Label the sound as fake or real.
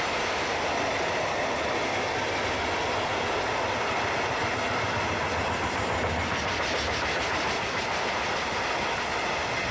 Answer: real